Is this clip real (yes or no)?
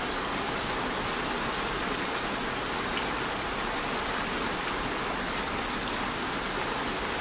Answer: yes